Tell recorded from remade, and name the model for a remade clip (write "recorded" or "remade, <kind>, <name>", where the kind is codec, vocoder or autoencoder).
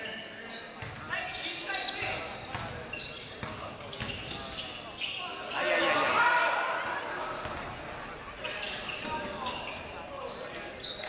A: recorded